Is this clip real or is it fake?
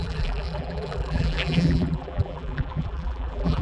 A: fake